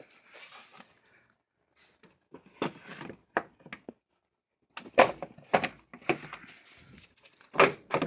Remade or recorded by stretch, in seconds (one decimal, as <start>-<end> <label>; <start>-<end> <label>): 0.0-8.1 recorded